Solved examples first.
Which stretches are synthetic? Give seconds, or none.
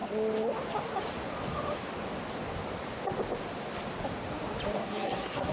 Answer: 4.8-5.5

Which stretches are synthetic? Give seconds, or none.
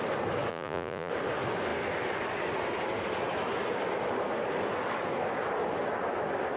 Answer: 0.5-1.1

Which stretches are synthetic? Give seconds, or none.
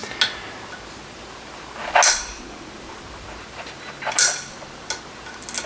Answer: none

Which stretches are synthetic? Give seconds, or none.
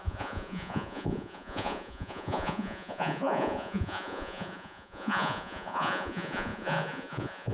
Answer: 0.0-7.5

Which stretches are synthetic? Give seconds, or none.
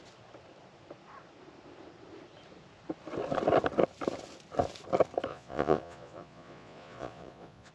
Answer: 5.3-7.7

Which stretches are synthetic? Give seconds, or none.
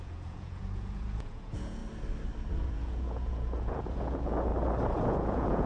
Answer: 0.0-1.8; 2.5-4.5; 5.0-5.7